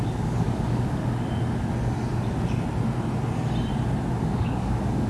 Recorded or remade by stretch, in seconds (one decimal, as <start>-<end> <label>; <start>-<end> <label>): 0.0-1.0 remade; 1.0-4.1 recorded; 4.1-5.1 remade